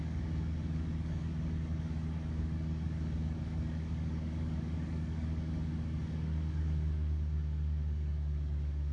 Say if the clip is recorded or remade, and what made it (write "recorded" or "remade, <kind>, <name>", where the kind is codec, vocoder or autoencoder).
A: remade, codec, DAC